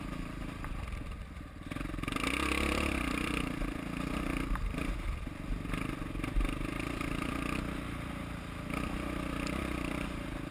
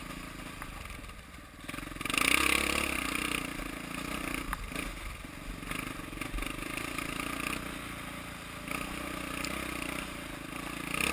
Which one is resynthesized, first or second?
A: first